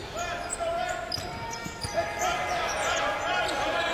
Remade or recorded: recorded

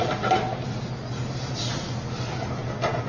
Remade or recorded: recorded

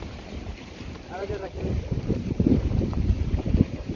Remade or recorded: remade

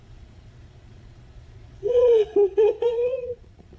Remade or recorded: remade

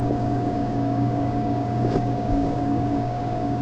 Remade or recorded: remade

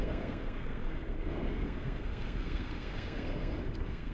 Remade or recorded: remade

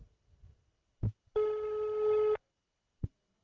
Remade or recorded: recorded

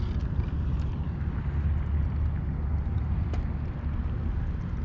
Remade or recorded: recorded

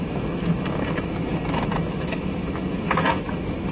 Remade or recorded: remade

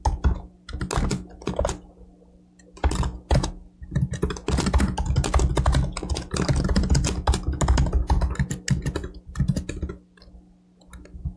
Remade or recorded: recorded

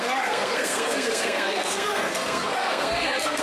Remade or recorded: remade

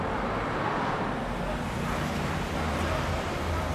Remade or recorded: remade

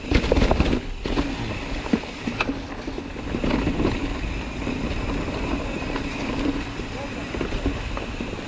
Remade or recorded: recorded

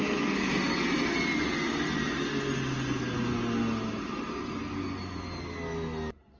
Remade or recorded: recorded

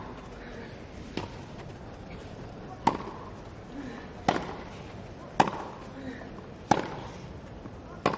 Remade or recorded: recorded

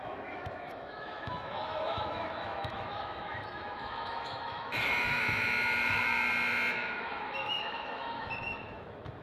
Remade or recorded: remade